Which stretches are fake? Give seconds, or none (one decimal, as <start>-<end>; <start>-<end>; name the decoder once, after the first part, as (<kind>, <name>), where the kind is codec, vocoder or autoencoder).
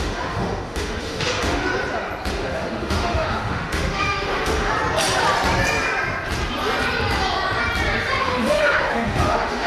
0.0-1.7 (autoencoder, DAC-VAE); 2.3-4.7; 8.2-9.7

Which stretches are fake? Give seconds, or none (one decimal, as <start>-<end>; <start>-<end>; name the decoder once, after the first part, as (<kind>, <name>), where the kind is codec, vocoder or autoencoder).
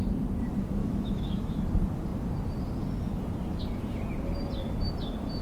0.8-1.6 (autoencoder, DAC-VAE)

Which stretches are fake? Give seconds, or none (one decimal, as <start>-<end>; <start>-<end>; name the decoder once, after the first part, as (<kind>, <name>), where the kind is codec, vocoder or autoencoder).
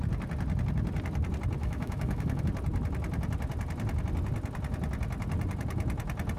1.6-2.4 (autoencoder, DAC-VAE)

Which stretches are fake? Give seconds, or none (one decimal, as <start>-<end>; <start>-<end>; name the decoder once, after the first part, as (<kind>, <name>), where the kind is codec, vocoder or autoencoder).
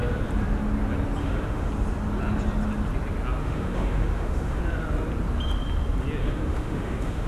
1.2-1.7 (autoencoder, DAC-VAE); 3.4-4.6; 6.2-7.3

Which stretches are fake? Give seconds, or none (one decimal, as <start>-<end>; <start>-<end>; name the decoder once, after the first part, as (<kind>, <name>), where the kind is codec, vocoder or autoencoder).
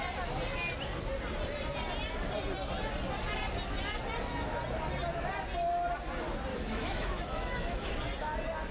6.5-7.9 (autoencoder, DAC-VAE)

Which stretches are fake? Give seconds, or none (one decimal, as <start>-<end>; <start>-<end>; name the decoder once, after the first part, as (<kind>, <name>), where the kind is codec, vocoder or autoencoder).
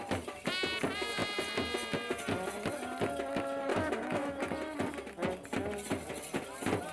3.7-4.4 (autoencoder, DAC-VAE)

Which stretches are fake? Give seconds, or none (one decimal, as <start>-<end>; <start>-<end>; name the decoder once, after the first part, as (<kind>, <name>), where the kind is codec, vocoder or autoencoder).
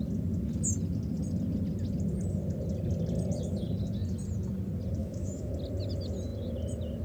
5.0-5.5 (autoencoder, DAC-VAE)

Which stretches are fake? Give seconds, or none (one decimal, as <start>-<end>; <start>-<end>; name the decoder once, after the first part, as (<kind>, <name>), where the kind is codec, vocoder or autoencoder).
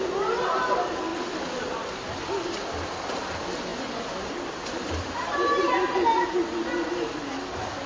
none